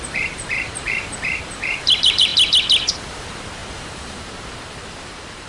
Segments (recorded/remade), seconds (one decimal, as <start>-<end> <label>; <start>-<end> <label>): 0.0-2.3 remade; 2.3-2.9 recorded; 2.9-5.5 remade